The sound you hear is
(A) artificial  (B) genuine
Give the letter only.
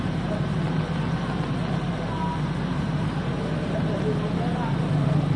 B